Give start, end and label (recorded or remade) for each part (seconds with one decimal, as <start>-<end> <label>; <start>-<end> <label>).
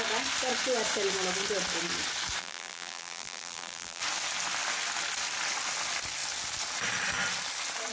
0.0-2.4 recorded; 2.4-4.0 remade; 4.0-7.9 recorded